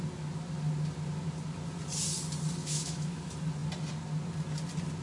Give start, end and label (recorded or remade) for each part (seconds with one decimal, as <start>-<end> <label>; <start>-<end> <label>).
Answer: 0.0-2.6 recorded; 2.6-3.2 remade; 3.2-5.0 recorded